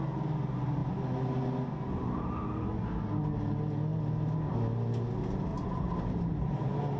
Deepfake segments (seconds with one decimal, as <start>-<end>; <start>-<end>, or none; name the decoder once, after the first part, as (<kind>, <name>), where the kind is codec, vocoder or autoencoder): 5.5-6.5 (vocoder, BigVGAN v2)